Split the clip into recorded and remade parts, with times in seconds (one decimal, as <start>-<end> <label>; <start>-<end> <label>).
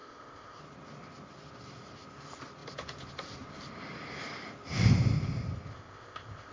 0.0-0.6 remade; 0.6-5.7 recorded; 5.7-6.5 remade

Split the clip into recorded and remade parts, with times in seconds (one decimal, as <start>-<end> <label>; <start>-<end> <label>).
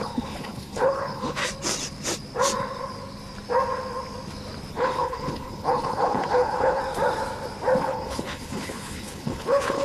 0.0-1.4 remade; 1.4-4.7 recorded; 4.7-6.8 remade; 6.8-7.8 recorded; 7.8-9.8 remade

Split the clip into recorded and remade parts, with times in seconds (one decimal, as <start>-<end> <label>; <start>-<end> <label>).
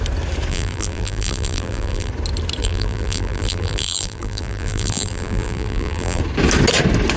0.0-0.5 recorded; 0.5-2.1 remade; 2.1-2.6 recorded; 2.6-6.2 remade; 6.2-7.2 recorded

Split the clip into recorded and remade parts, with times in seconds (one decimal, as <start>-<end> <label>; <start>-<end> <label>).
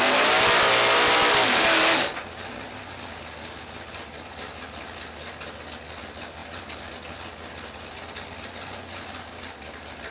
0.0-10.1 recorded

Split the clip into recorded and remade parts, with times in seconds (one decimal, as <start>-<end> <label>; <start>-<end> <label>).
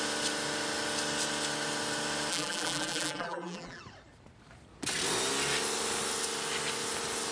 0.0-2.3 recorded; 2.3-3.8 remade; 3.8-7.3 recorded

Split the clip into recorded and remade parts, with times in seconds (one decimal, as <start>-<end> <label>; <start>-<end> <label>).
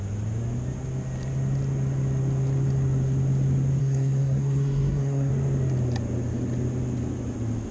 0.0-3.8 recorded; 3.8-5.3 remade; 5.3-7.7 recorded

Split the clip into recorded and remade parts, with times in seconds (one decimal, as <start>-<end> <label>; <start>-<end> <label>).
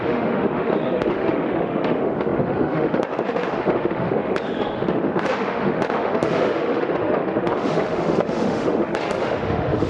0.0-9.9 remade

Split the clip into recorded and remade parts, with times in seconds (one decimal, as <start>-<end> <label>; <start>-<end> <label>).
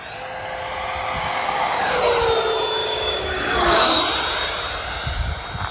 0.0-1.2 recorded; 1.2-2.0 remade; 2.0-2.8 recorded; 2.8-4.0 remade; 4.0-5.7 recorded